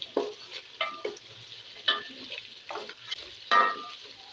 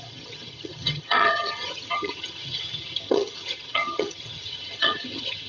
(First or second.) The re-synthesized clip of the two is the second